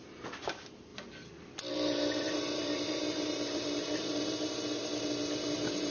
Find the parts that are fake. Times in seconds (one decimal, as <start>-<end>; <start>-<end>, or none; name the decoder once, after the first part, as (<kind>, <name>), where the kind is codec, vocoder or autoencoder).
0.0-0.9 (vocoder, BigVGAN v2); 1.7-5.9